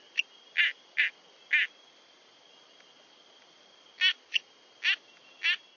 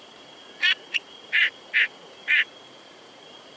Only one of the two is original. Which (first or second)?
first